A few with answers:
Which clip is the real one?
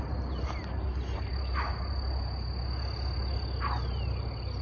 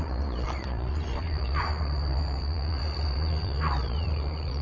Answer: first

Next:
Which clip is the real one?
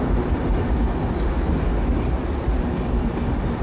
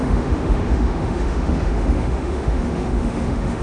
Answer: first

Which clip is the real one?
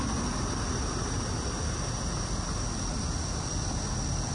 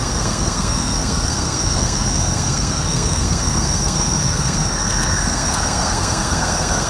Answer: first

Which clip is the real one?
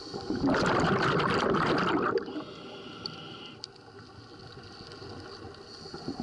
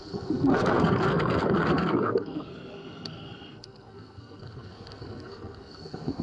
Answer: first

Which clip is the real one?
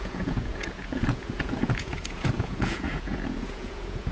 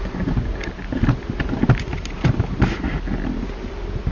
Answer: second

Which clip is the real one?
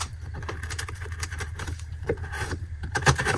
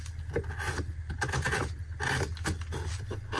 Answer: second